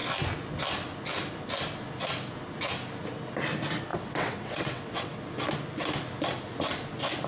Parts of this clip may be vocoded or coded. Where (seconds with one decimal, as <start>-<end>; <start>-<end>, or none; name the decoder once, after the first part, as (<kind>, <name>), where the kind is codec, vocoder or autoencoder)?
3.9-5.2 (vocoder, WaveNeXt)